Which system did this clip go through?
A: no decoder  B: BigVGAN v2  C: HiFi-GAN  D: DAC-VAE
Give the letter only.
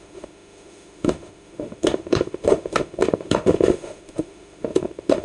D